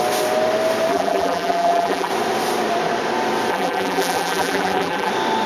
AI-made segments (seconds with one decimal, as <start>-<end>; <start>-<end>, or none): 0.9-2.1; 3.5-5.1